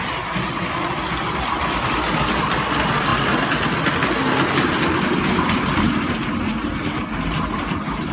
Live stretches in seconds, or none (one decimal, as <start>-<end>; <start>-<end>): 0.0-8.1

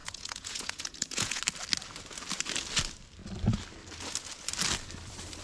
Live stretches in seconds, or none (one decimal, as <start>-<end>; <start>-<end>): 1.4-5.4